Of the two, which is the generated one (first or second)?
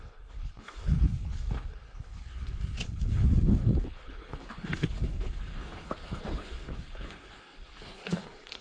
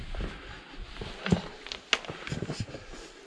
first